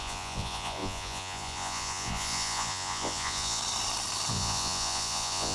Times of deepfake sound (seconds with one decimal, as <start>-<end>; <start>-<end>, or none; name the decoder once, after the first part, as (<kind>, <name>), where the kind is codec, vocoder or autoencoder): 0.0-3.6 (vocoder, Vocos); 4.3-5.5